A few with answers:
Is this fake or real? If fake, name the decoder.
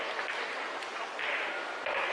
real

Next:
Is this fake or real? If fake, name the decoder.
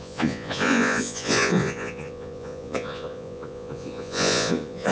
fake, vocoder, Vocos